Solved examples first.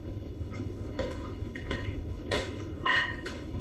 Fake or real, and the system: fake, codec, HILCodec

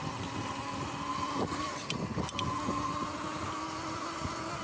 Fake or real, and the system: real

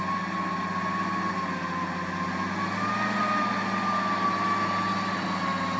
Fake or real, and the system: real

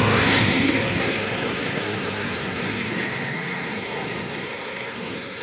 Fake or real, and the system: fake, codec, SNAC